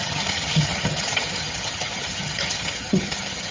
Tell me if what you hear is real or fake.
fake